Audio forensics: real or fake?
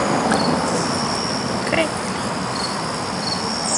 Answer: real